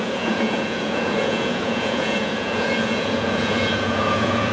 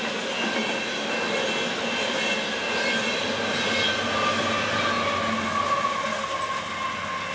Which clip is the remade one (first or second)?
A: first